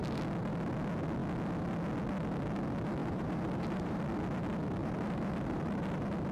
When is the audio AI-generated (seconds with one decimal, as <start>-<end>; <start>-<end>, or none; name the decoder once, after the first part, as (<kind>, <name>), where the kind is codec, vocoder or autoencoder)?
3.0-4.0 (vocoder, BigVGAN v2); 4.8-5.8